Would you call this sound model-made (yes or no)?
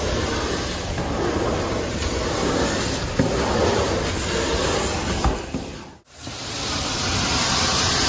no